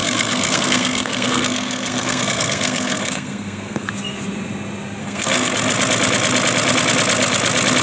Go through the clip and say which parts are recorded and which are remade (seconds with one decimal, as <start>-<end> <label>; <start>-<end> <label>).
0.0-3.9 remade; 3.9-5.0 recorded; 5.0-5.5 remade; 5.5-7.8 recorded